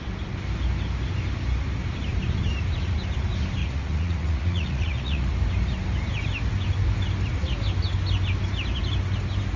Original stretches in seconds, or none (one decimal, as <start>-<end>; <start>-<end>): 0.0-3.6; 5.3-9.6